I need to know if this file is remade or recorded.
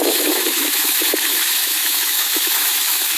remade